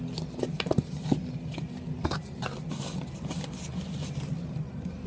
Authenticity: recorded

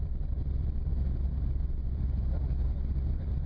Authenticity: remade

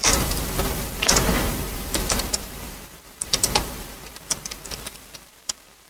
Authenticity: remade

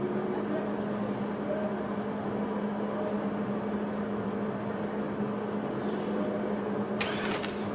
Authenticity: recorded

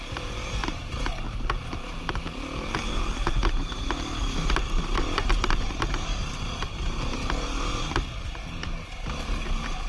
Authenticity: remade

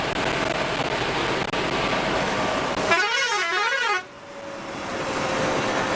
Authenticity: recorded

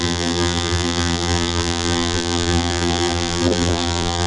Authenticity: remade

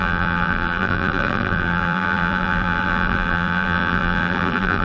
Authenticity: remade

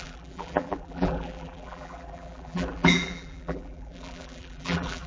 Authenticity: remade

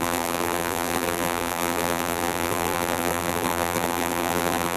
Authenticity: remade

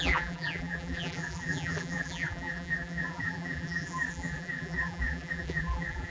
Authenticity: remade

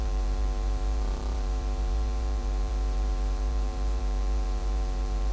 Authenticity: remade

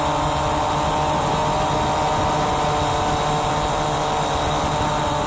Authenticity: recorded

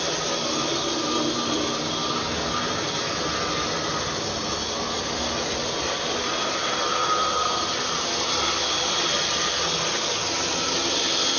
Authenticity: recorded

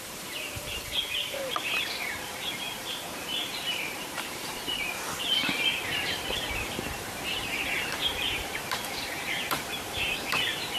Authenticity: remade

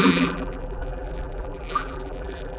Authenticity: remade